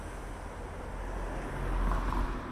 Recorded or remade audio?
recorded